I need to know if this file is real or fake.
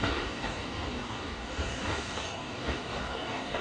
fake